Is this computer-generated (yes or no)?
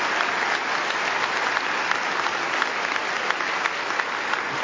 no